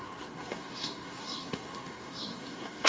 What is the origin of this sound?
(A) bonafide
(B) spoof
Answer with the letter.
B